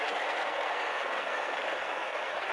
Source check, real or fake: fake